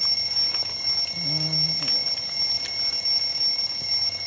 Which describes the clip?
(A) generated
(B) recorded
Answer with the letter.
B